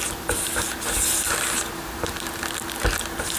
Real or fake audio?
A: real